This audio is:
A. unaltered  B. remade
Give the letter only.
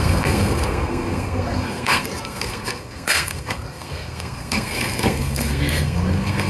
B